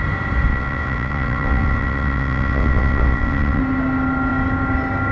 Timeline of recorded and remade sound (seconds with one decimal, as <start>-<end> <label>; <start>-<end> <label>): 0.0-0.5 recorded; 0.5-3.6 remade; 3.6-5.1 recorded